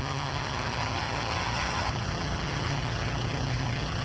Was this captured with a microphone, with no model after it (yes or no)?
no